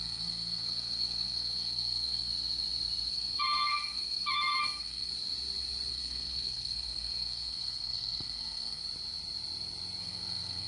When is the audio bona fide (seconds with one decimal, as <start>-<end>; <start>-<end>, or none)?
2.3-3.1; 5.1-5.9; 8.8-10.0

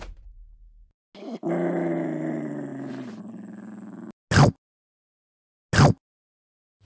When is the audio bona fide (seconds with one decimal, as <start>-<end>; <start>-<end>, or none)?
0.0-6.9